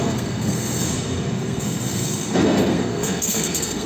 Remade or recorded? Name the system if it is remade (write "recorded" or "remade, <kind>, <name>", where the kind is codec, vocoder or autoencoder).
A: remade, codec, SNAC